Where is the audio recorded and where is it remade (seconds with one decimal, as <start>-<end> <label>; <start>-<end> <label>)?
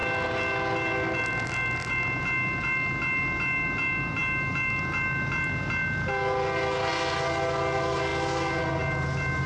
0.0-9.5 recorded